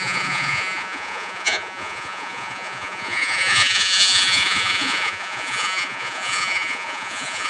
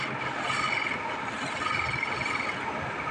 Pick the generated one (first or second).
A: first